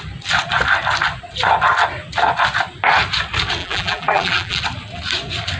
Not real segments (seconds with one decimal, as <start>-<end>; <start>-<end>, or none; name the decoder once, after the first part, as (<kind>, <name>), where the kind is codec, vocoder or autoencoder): 3.6-4.6 (vocoder, BigVGAN v2)